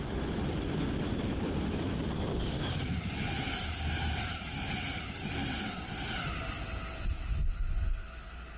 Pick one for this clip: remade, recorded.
recorded